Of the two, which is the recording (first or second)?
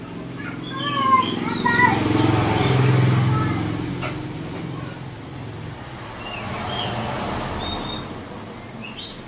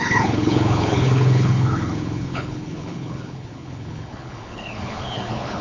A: first